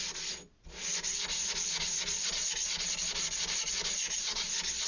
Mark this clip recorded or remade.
recorded